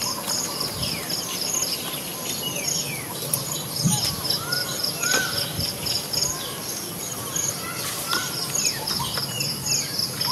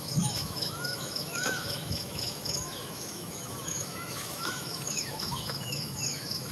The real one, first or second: first